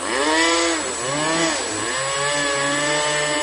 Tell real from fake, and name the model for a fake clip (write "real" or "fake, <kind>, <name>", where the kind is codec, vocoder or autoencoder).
real